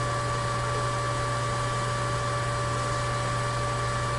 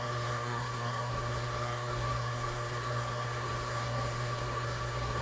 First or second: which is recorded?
first